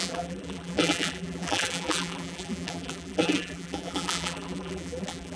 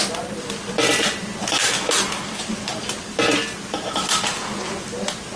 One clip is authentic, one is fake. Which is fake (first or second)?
first